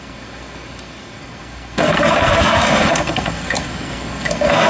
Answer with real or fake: fake